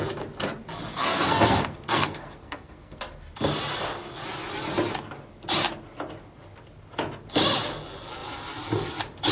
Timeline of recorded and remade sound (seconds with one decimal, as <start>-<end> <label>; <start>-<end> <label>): 0.0-0.9 recorded; 0.9-3.0 remade; 3.0-9.3 recorded